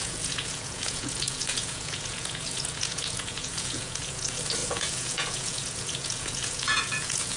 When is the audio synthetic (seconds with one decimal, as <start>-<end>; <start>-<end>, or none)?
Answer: 0.0-7.4